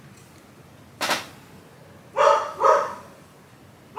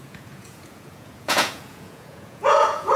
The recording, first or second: first